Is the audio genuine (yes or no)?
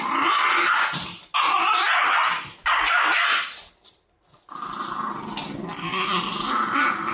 yes